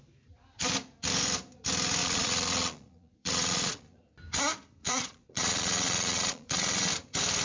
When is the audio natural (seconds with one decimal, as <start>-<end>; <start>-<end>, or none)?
0.0-2.0; 4.0-4.8; 6.9-7.4